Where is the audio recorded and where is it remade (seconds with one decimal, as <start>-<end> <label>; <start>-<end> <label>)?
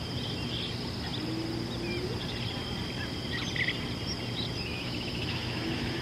0.0-4.7 recorded; 4.7-6.0 remade